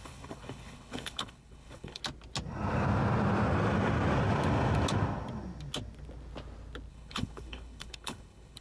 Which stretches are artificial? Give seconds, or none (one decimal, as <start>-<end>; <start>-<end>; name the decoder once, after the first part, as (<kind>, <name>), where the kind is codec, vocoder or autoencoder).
0.0-2.0 (codec, HILCodec); 6.9-8.6